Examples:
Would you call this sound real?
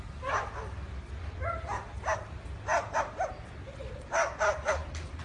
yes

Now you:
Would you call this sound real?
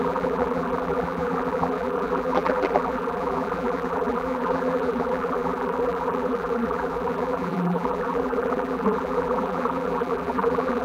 no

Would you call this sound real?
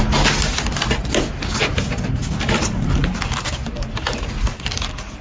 yes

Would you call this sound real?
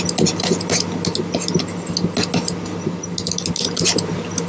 yes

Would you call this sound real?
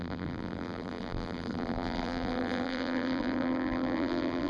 no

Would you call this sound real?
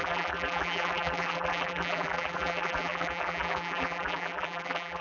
no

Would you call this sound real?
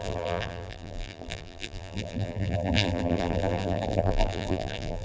no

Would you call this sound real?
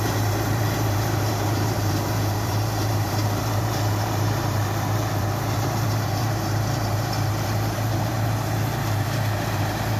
no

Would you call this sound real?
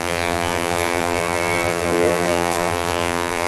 no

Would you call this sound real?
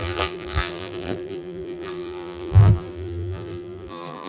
no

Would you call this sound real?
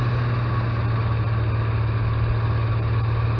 yes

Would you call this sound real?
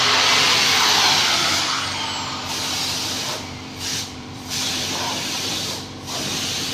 no